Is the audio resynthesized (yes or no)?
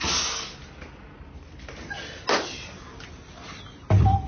no